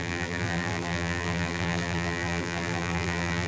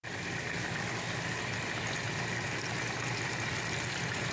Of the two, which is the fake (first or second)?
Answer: first